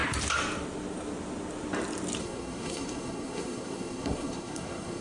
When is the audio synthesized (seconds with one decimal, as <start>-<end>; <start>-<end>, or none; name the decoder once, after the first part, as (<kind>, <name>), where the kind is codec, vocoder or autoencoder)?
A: 2.2-5.0 (codec, SNAC)